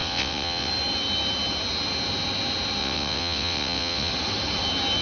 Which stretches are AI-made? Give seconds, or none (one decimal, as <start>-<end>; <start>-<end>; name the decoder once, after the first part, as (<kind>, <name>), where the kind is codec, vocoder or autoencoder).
0.0-0.7 (vocoder, WaveNeXt); 2.8-4.1